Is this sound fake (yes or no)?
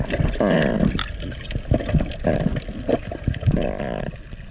no